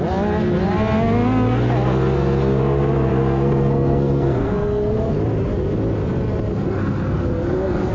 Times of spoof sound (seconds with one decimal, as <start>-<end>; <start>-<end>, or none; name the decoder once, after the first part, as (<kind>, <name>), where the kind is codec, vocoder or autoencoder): 3.1-5.2 (codec, SNAC); 6.5-7.9